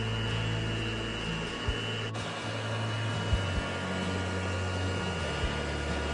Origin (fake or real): real